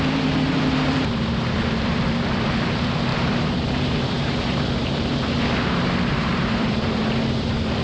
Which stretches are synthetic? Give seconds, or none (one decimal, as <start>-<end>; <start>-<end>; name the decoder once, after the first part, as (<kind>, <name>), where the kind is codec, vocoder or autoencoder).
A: 0.0-7.8 (vocoder, BigVGAN v2)